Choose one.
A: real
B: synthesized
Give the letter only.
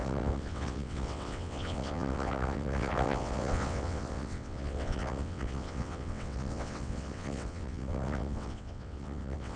B